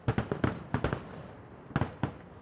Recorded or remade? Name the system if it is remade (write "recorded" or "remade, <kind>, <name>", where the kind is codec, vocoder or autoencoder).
recorded